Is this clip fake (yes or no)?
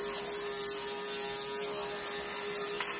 no